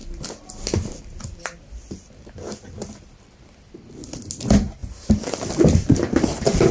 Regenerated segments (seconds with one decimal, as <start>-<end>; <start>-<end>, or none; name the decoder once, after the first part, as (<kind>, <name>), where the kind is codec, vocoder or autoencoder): none